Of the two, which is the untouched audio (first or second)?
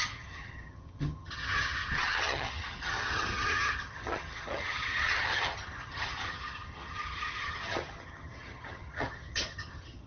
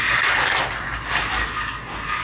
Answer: second